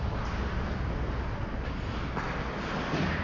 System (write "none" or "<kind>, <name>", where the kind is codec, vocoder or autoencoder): none